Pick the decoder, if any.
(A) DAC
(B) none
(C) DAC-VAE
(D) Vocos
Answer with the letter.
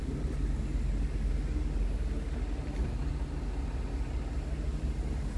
B